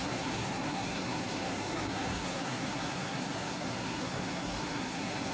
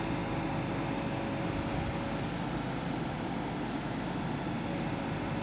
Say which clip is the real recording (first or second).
second